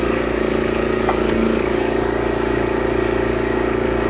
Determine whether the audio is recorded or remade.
remade